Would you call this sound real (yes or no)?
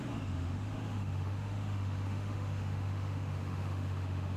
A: no